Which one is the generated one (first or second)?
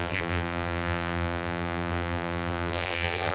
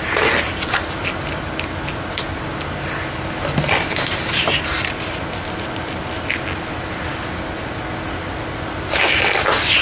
first